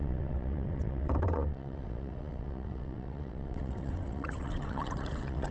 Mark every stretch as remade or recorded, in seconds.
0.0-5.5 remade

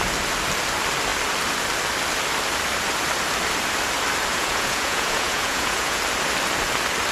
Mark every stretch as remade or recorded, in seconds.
0.0-4.3 recorded; 4.3-6.0 remade; 6.0-7.1 recorded

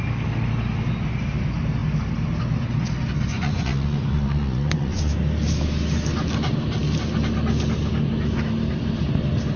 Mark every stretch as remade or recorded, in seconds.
0.0-3.3 recorded; 3.3-5.1 remade; 5.1-9.6 recorded

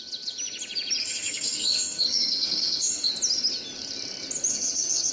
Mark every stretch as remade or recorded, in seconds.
0.0-1.0 recorded; 1.0-3.1 remade; 3.1-4.5 recorded; 4.5-5.1 remade

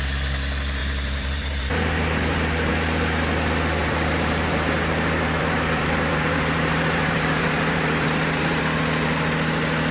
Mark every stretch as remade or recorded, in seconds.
0.0-0.8 recorded; 0.8-2.7 remade; 2.7-3.8 recorded; 3.8-8.6 remade; 8.6-9.9 recorded

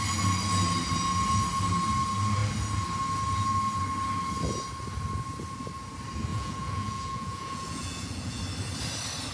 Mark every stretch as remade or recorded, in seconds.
0.0-6.3 recorded; 6.3-8.4 remade; 8.4-9.3 recorded

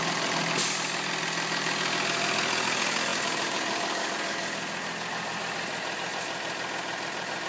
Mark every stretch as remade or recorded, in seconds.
0.0-7.5 recorded